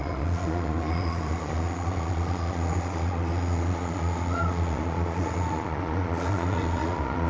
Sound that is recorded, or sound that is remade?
remade